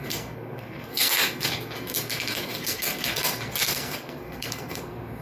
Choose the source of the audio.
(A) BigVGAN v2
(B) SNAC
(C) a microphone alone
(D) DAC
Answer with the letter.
B